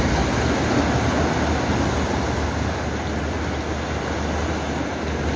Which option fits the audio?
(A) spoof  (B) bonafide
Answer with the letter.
B